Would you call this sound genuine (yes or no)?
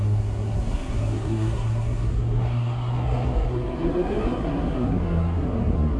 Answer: no